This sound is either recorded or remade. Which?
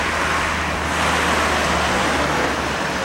recorded